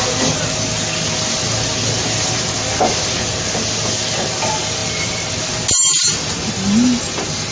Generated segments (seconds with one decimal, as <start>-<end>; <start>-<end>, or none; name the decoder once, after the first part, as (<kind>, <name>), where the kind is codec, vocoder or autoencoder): none